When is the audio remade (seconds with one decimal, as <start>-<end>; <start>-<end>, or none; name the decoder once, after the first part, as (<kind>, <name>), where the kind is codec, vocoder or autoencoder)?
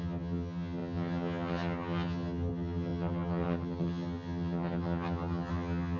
0.0-6.0 (vocoder, HiFi-GAN)